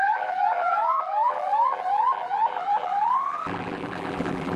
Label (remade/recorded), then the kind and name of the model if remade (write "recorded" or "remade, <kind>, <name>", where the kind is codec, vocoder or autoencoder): remade, vocoder, BigVGAN v2